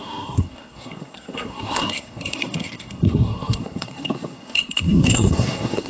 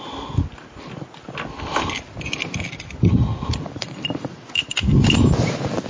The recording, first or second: second